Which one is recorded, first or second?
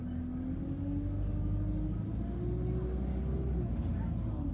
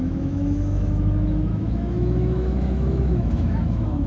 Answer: first